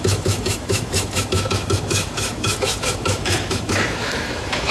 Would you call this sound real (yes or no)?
no